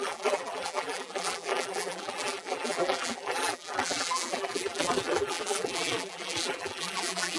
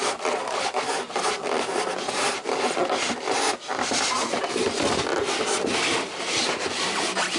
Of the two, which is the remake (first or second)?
first